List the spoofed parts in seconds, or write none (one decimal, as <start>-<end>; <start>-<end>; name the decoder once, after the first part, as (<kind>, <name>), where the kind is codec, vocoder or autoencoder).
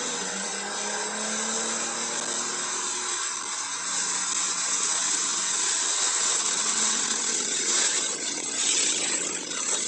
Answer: 0.0-0.5 (vocoder, WaveNeXt); 4.5-9.9